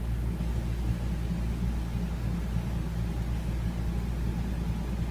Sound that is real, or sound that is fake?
real